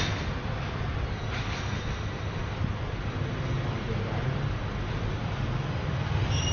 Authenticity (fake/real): real